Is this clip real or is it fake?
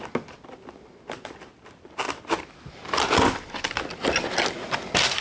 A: real